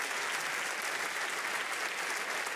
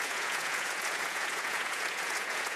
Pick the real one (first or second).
first